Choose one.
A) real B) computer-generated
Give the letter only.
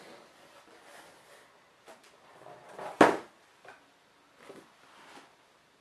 A